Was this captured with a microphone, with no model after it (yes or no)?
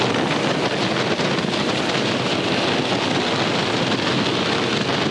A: yes